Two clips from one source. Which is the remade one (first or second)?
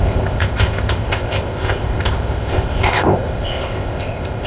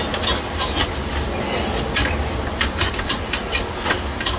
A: first